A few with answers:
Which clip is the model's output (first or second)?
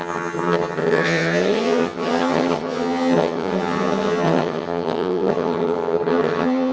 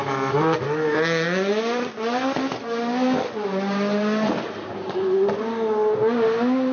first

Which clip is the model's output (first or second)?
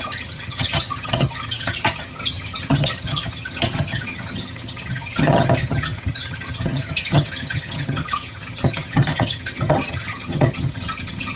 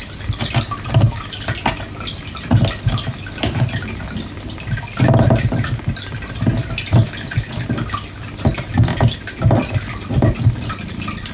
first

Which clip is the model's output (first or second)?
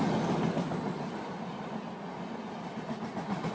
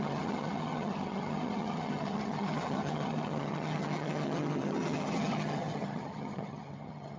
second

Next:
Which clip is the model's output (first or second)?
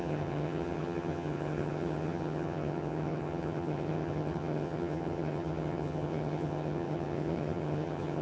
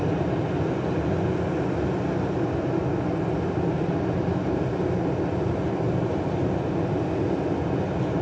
first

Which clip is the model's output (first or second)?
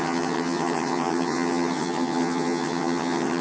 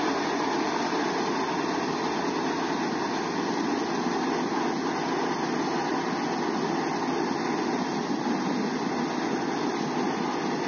first